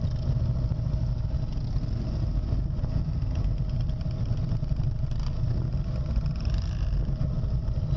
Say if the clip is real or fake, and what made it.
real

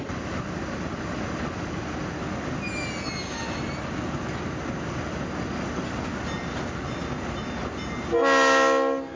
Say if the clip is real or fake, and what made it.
real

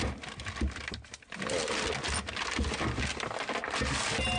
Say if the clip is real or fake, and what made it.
real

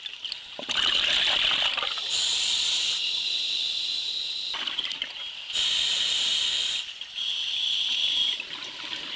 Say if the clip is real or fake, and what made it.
real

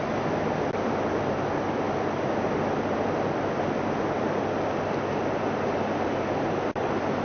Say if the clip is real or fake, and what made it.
real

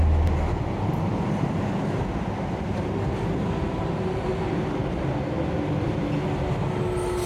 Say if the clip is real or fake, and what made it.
real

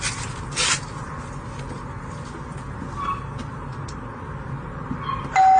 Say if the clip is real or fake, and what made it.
real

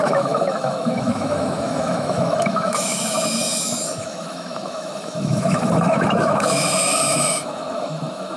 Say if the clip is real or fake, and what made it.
fake, autoencoder, DAC-VAE